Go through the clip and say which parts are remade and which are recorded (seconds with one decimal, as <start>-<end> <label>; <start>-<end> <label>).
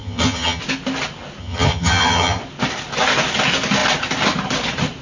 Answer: 0.0-0.6 remade; 0.6-1.4 recorded; 1.4-2.4 remade; 2.4-5.0 recorded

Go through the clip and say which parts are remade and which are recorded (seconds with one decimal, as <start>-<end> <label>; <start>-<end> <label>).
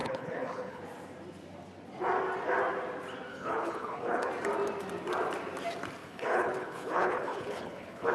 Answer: 0.0-0.8 remade; 0.8-3.3 recorded; 3.3-4.3 remade; 4.3-6.0 recorded; 6.0-8.1 remade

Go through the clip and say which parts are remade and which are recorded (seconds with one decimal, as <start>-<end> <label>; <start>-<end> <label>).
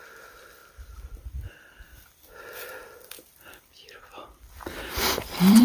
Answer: 0.0-5.6 remade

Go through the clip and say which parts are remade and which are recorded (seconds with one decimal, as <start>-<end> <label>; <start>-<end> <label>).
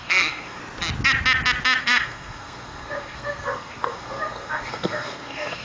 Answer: 0.0-0.6 remade; 0.6-1.8 recorded; 1.8-5.6 remade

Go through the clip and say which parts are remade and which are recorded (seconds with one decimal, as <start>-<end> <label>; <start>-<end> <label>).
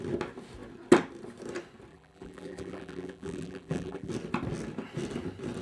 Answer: 0.0-1.9 recorded; 1.9-4.1 remade; 4.1-5.6 recorded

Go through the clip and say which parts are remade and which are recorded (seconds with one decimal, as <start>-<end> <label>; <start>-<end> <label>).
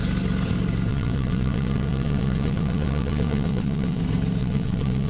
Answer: 0.0-0.9 recorded; 0.9-4.0 remade; 4.0-4.4 recorded; 4.4-5.1 remade